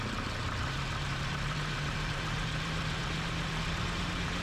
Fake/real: fake